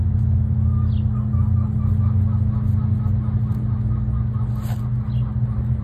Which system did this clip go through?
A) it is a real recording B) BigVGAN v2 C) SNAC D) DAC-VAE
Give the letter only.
A